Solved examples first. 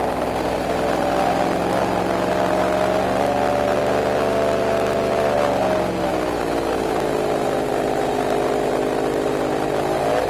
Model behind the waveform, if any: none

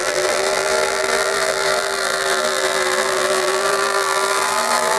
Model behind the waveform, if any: vocoder, BigVGAN v2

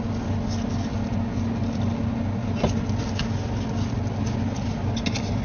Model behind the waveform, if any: none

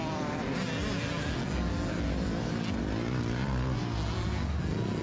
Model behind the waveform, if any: none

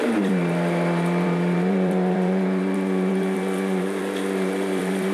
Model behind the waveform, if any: vocoder, BigVGAN v2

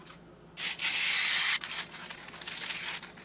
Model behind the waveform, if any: none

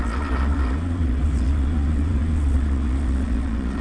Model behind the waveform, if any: vocoder, Vocos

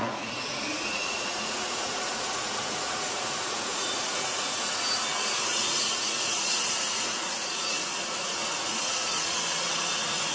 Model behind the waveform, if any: vocoder, Vocos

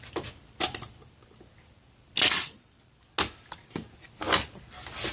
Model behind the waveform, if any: none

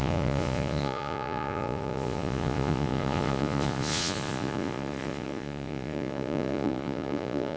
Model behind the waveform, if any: vocoder, Vocos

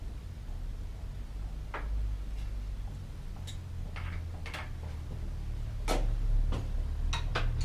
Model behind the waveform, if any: none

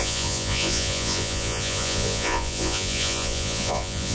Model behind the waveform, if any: vocoder, Vocos